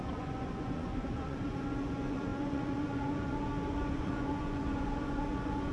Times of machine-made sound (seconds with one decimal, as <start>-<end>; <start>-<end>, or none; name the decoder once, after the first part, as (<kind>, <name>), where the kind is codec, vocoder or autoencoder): 0.0-5.7 (vocoder, Vocos)